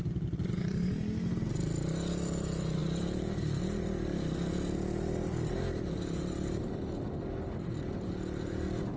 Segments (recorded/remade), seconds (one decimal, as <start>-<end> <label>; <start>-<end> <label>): 0.0-9.0 recorded